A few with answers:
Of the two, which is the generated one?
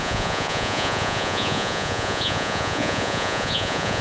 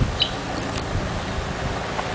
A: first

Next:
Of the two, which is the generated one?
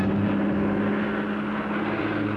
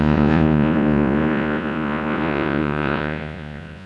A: second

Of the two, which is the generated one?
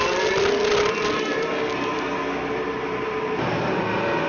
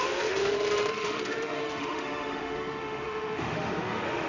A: second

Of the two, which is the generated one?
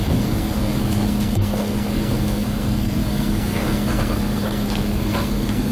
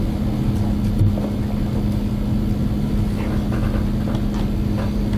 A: first